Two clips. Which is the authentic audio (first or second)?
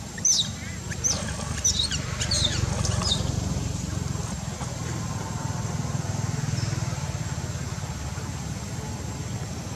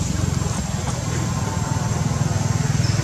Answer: second